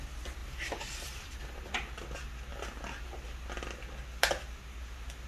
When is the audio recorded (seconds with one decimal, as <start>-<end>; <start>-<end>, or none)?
0.0-0.4; 1.7-5.3